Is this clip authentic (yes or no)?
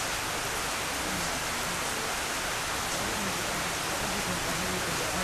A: yes